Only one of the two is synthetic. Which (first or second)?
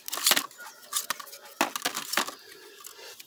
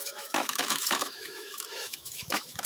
second